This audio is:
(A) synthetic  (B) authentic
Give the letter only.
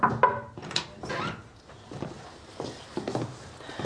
B